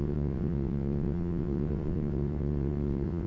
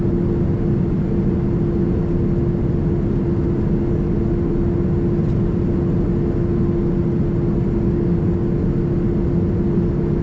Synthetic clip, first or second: first